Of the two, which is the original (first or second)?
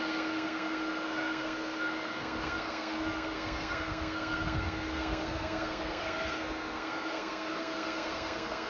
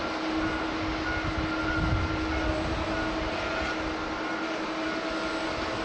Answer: second